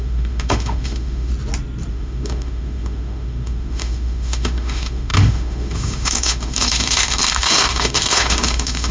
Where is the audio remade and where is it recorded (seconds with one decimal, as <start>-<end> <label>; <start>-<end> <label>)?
0.0-1.3 remade; 1.3-1.9 recorded; 1.9-8.9 remade